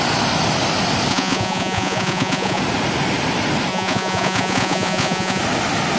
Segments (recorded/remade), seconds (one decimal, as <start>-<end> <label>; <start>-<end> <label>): 0.0-1.1 recorded; 1.1-2.6 remade; 2.6-3.7 recorded; 3.7-5.4 remade; 5.4-6.0 recorded